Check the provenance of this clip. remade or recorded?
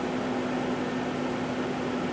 recorded